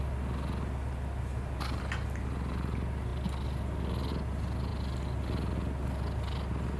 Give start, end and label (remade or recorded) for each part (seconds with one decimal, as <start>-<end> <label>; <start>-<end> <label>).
0.0-1.3 recorded; 1.3-1.8 remade; 1.8-6.8 recorded